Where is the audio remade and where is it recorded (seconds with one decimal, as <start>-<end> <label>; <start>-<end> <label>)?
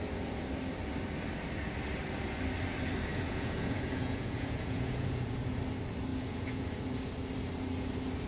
0.0-3.1 recorded; 3.1-5.6 remade; 5.6-6.1 recorded; 6.1-6.9 remade; 6.9-8.3 recorded